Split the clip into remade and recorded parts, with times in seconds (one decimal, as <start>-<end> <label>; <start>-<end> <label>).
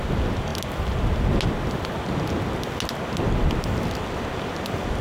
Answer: 0.0-5.0 recorded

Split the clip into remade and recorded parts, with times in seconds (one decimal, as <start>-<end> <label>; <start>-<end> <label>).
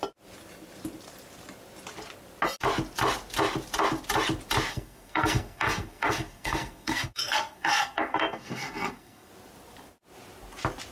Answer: 0.0-4.7 recorded; 4.7-9.3 remade; 9.3-10.9 recorded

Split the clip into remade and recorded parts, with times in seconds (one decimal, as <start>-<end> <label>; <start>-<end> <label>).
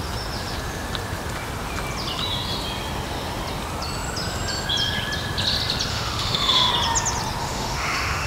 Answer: 0.0-5.9 recorded; 5.9-6.7 remade; 6.7-7.4 recorded; 7.4-8.3 remade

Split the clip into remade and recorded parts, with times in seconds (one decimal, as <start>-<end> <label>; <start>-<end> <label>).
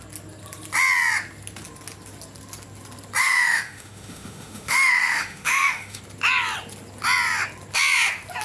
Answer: 0.0-3.2 recorded; 3.2-6.0 remade; 6.0-8.4 recorded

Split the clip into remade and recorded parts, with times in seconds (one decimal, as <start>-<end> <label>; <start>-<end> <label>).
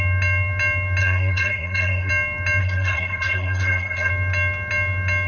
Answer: 0.0-1.0 recorded; 1.0-2.1 remade; 2.1-2.6 recorded; 2.6-4.1 remade; 4.1-5.3 recorded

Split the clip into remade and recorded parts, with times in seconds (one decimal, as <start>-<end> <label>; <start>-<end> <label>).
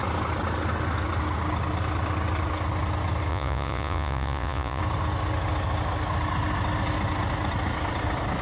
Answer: 0.0-3.3 recorded; 3.3-4.8 remade; 4.8-8.4 recorded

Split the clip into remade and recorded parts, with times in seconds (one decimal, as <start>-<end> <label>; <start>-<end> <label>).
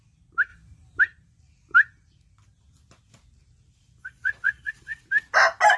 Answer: 0.0-4.0 recorded; 4.0-5.0 remade; 5.0-5.8 recorded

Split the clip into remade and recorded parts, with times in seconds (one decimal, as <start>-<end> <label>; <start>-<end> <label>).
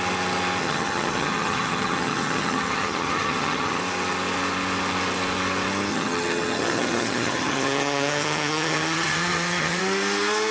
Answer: 0.0-0.6 recorded; 0.6-3.8 remade; 3.8-5.9 recorded; 5.9-9.8 remade; 9.8-10.5 recorded